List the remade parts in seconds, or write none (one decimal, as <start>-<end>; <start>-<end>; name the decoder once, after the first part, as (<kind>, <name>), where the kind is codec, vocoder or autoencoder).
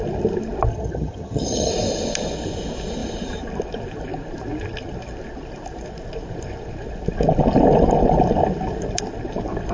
0.7-1.7 (vocoder, HiFi-GAN)